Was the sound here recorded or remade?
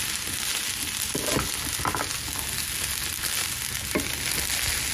recorded